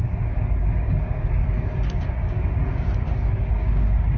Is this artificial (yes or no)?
yes